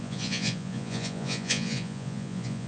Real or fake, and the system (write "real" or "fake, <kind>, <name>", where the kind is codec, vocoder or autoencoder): fake, vocoder, Vocos